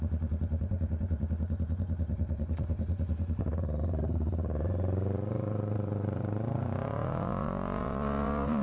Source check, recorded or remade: remade